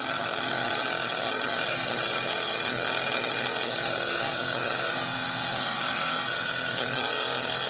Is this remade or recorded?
remade